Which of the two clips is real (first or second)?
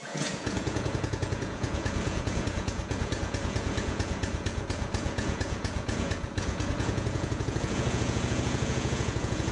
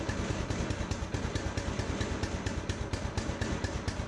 second